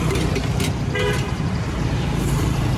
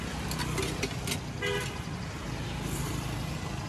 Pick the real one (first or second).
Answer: second